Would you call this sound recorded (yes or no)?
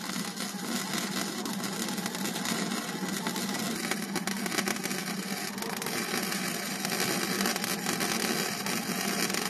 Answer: yes